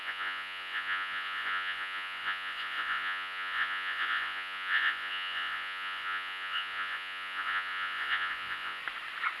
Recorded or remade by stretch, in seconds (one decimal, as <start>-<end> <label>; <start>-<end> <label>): 0.0-8.8 remade; 8.8-9.4 recorded